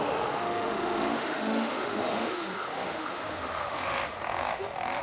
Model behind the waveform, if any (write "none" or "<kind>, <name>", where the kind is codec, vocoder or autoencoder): autoencoder, DAC-VAE